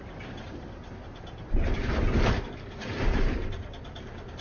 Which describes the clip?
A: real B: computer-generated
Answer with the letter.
B